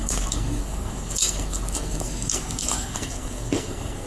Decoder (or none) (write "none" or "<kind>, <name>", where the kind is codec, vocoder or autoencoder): codec, SNAC